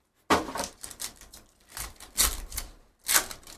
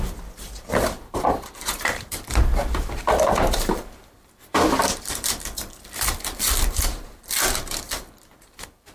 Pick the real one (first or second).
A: first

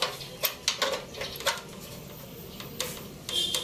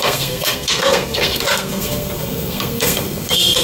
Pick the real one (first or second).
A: first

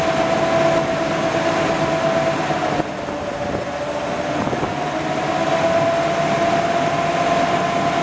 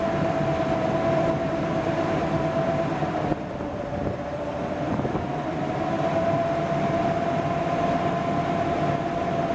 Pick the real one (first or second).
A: first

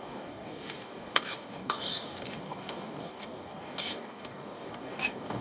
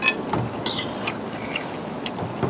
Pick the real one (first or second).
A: second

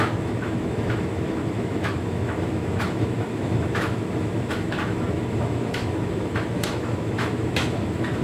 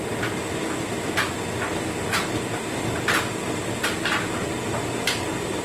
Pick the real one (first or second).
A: second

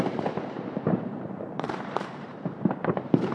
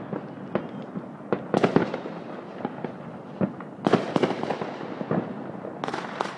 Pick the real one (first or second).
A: second